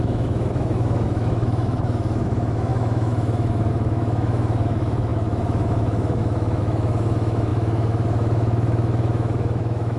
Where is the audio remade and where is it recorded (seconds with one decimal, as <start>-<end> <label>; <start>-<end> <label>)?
0.0-10.0 remade

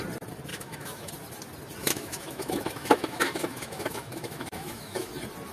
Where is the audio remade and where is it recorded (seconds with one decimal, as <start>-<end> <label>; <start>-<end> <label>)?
0.0-0.5 recorded; 0.5-1.1 remade; 1.1-1.8 recorded; 1.8-5.1 remade; 5.1-5.5 recorded

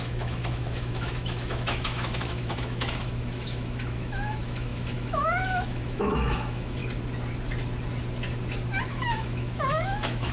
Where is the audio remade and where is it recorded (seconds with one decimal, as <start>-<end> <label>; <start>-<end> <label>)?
0.0-6.8 remade; 6.8-8.8 recorded; 8.8-10.3 remade

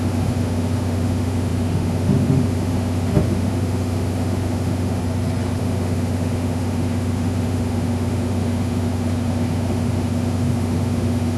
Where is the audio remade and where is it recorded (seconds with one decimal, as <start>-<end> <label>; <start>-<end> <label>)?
0.0-5.0 remade; 5.0-5.6 recorded; 5.6-11.4 remade

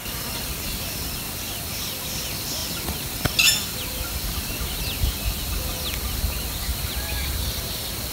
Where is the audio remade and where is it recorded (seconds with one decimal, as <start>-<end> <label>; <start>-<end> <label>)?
0.0-8.1 recorded

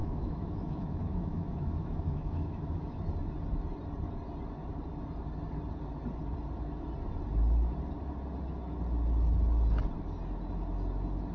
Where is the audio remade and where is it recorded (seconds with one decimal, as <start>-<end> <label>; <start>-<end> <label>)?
0.0-3.0 remade; 3.0-11.3 recorded

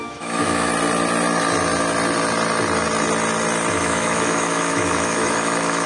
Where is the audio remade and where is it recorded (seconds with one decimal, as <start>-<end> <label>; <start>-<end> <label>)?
0.0-0.7 remade; 0.7-3.7 recorded; 3.7-5.9 remade

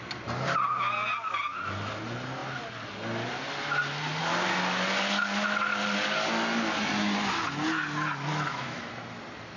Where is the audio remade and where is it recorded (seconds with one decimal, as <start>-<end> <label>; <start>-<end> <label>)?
0.0-8.3 recorded; 8.3-8.9 remade; 8.9-9.6 recorded